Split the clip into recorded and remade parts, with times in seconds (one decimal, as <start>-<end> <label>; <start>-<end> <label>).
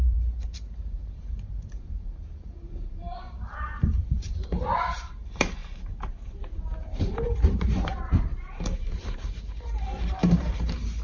0.0-5.6 remade; 5.6-6.8 recorded; 6.8-7.9 remade; 7.9-8.6 recorded; 8.6-11.0 remade